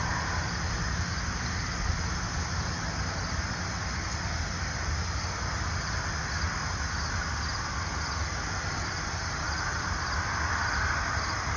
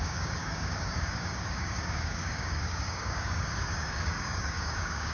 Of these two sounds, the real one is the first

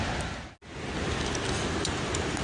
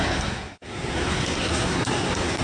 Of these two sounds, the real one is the first